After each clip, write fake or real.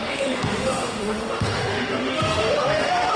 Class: fake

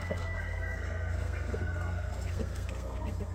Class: fake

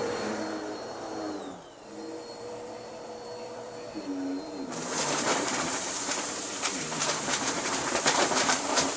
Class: fake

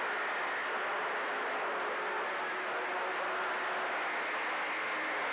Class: real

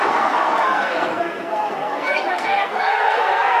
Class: fake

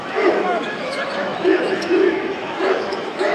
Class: fake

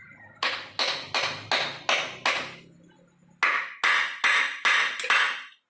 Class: real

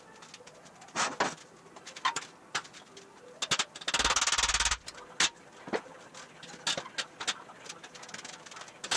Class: real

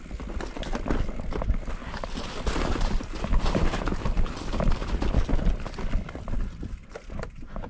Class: real